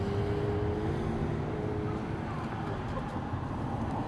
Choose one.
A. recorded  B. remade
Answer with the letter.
A